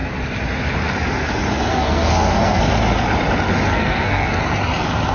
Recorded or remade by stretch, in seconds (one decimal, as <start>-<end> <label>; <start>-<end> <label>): 0.0-1.7 recorded; 1.7-2.6 remade; 2.6-3.7 recorded; 3.7-4.4 remade; 4.4-5.1 recorded